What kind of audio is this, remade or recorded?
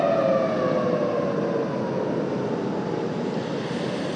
recorded